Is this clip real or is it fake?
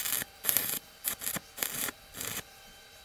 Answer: fake